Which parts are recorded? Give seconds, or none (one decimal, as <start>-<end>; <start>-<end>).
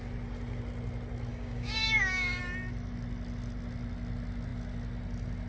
0.0-1.3; 2.4-5.5